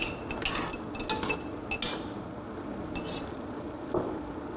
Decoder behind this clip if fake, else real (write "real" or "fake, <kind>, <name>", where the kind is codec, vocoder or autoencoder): real